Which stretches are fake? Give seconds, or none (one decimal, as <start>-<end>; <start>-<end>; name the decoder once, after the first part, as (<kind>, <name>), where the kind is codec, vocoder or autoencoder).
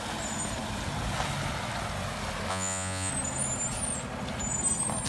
2.5-3.1 (vocoder, Vocos)